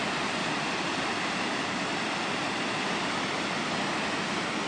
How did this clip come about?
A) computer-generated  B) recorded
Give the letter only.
B